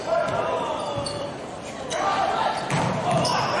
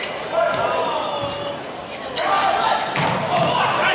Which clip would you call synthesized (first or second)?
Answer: first